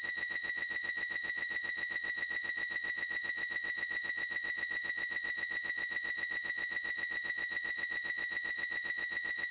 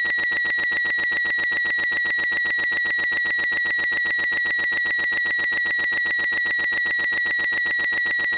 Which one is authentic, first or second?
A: second